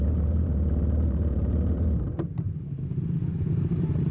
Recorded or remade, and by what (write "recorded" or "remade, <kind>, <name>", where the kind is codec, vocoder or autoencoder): remade, vocoder, BigVGAN v2